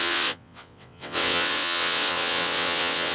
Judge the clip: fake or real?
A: fake